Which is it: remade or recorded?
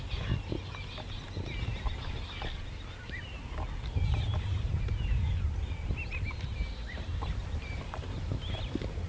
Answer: recorded